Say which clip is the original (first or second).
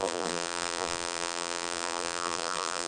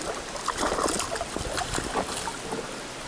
second